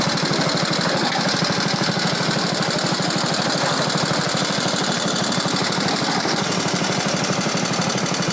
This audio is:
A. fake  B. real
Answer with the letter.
A